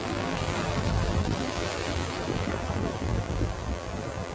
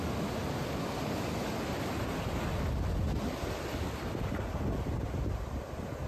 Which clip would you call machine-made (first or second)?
first